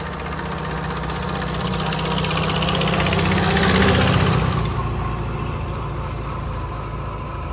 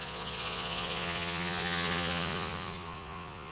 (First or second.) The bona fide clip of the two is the first